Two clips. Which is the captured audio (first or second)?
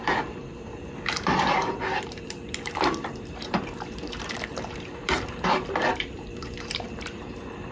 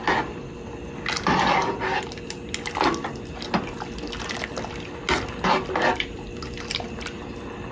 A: second